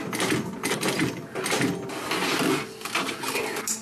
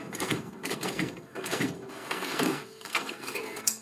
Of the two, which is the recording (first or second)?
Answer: first